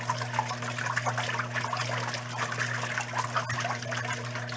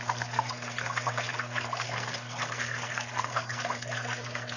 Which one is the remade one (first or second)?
second